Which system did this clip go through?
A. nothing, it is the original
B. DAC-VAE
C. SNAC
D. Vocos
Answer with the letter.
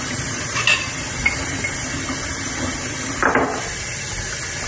A